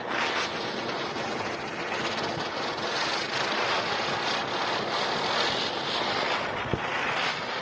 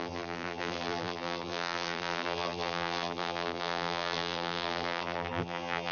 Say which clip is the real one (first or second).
first